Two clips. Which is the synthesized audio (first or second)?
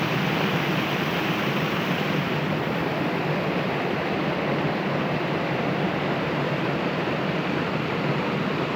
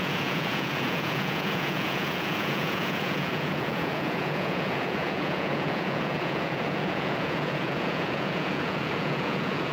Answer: second